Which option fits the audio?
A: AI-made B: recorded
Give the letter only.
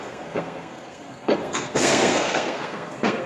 A